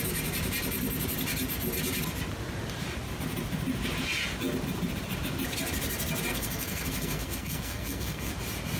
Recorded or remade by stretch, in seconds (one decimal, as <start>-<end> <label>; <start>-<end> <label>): 0.0-6.3 recorded; 6.3-8.3 remade; 8.3-8.8 recorded